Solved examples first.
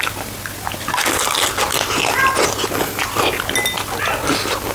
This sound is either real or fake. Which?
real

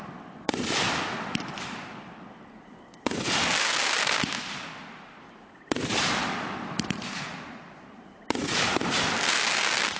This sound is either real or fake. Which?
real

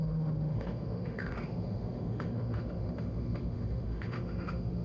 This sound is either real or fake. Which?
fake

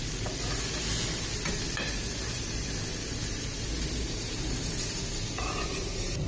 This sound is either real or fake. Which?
real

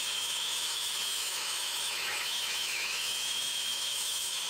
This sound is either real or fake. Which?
fake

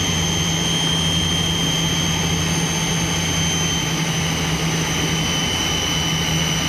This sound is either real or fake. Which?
real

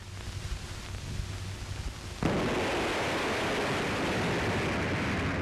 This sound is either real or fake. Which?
real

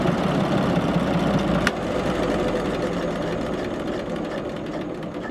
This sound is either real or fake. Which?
real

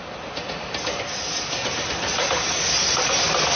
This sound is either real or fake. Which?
real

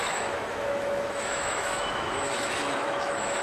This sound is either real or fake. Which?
fake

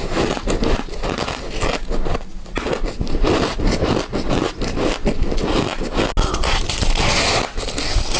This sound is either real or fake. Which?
real